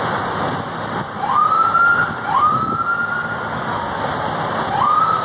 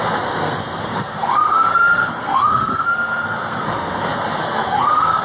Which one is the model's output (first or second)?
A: second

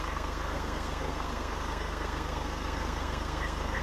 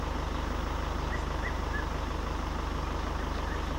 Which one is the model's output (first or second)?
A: first